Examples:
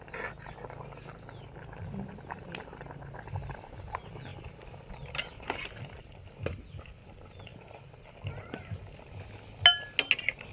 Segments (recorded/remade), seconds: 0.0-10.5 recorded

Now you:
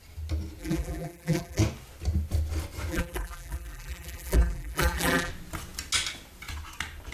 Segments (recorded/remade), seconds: 0.0-0.6 recorded; 0.6-1.6 remade; 1.6-2.9 recorded; 2.9-5.3 remade; 5.3-7.1 recorded

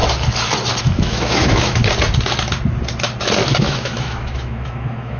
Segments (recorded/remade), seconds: 0.0-0.8 recorded; 0.8-1.8 remade; 1.8-3.6 recorded; 3.6-5.2 remade

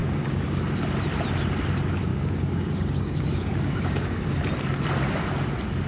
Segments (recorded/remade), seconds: 0.0-0.6 remade; 0.6-2.1 recorded; 2.1-4.4 remade; 4.4-5.9 recorded

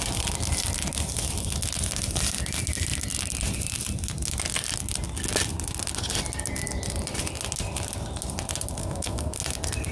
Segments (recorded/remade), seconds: 0.0-8.8 recorded; 8.8-9.4 remade; 9.4-9.9 recorded